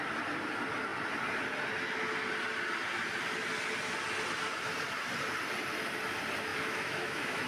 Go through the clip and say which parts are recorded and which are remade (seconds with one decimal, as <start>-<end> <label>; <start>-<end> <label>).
0.0-6.5 recorded; 6.5-7.5 remade